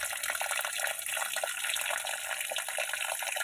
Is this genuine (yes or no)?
yes